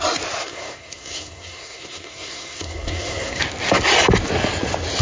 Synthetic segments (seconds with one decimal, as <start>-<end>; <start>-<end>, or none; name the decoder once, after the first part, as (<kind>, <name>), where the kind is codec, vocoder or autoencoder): 0.4-3.4 (codec, SNAC)